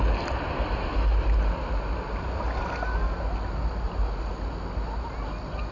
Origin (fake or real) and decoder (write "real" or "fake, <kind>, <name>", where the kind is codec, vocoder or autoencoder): real